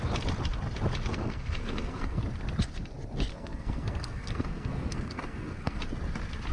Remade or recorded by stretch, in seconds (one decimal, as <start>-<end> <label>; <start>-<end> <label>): 0.0-1.1 recorded; 1.1-2.2 remade; 2.2-3.3 recorded; 3.3-5.8 remade; 5.8-6.5 recorded